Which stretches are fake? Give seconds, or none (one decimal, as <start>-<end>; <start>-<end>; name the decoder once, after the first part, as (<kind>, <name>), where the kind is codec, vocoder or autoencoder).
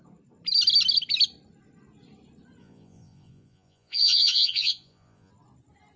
2.6-5.3 (vocoder, Vocos)